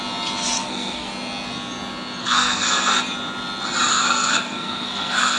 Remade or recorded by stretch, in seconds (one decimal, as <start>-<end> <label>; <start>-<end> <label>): 0.0-0.6 recorded; 0.6-1.1 remade; 1.1-2.2 recorded; 2.2-3.0 remade; 3.0-3.9 recorded; 3.9-5.4 remade